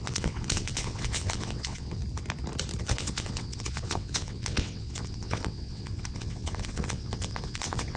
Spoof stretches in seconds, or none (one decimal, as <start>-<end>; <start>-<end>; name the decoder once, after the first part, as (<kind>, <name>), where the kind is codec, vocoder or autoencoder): 0.0-2.0 (vocoder, WaveNeXt); 2.8-8.0